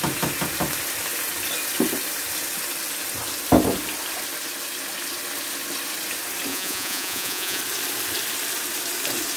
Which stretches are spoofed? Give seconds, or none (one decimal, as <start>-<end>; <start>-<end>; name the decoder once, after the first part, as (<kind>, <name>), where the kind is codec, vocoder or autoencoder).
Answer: 6.5-7.6 (vocoder, Vocos)